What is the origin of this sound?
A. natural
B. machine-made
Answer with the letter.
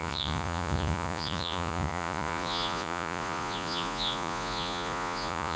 B